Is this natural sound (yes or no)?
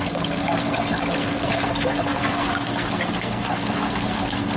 no